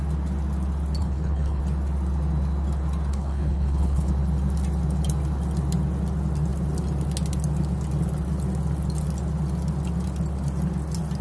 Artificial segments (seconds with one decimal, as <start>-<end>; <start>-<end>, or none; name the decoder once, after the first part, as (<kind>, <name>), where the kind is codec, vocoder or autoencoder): 1.0-1.6 (codec, HILCodec); 3.1-4.1